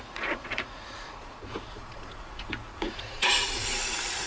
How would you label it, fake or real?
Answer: fake